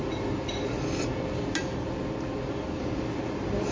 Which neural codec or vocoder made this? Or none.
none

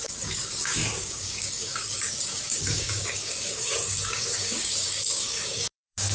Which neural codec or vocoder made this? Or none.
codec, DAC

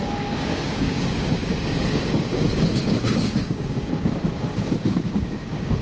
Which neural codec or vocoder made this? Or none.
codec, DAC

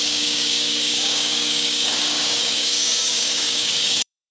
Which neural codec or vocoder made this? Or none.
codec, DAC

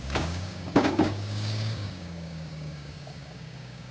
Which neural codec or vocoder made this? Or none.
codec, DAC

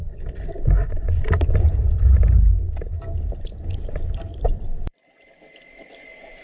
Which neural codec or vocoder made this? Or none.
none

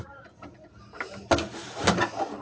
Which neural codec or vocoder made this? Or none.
none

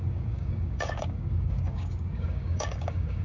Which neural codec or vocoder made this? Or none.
codec, DAC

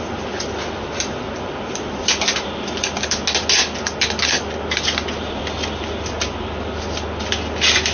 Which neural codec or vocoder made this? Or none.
none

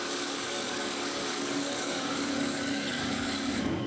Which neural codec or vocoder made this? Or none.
codec, DAC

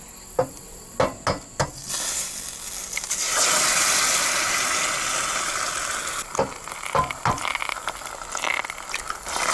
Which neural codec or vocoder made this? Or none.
none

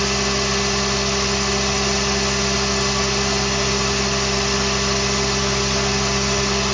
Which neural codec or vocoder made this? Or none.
none